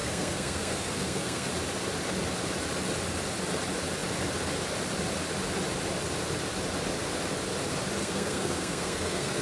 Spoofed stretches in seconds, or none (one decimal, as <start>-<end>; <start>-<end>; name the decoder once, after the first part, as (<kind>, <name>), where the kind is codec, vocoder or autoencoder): 0.0-1.5 (codec, SNAC); 8.0-9.4